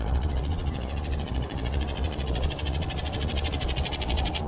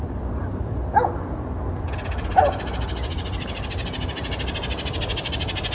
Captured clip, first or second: second